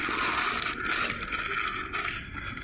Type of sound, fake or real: real